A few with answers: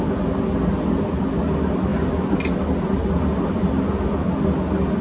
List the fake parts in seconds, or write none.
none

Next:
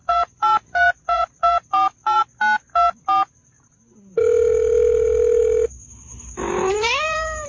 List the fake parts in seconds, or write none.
0.0-2.2; 6.7-7.5

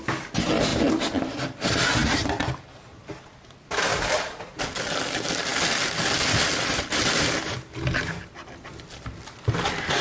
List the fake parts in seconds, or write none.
2.0-3.1; 3.9-4.4